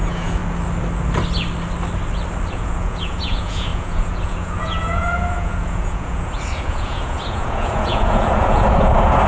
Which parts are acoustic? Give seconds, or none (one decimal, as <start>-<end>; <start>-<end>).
0.4-2.5